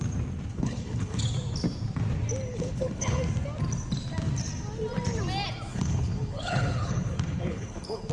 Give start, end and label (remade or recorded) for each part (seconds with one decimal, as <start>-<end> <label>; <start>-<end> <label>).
0.0-0.5 recorded; 0.5-1.2 remade; 1.2-2.5 recorded; 2.5-3.2 remade; 3.2-5.7 recorded; 5.7-8.1 remade